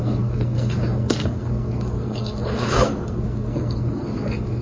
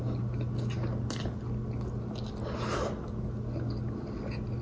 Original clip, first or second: second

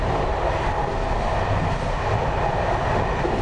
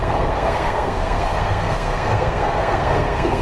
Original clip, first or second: first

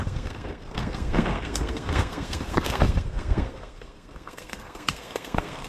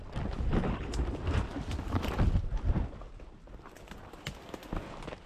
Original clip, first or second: second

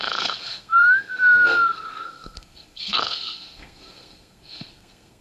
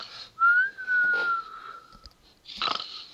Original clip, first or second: second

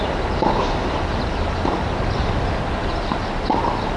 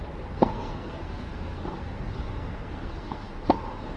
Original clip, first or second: first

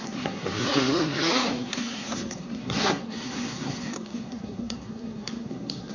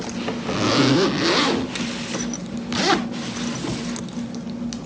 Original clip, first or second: second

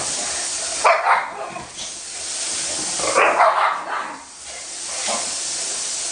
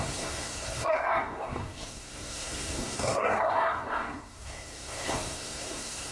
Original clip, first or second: first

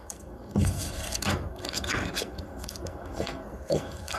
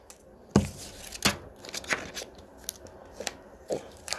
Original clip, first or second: second